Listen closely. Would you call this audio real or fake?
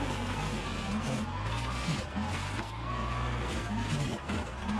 fake